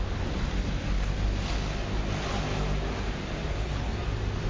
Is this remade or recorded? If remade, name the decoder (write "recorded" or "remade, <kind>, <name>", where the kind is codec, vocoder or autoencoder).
recorded